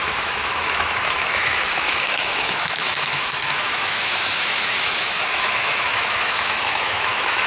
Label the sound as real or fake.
fake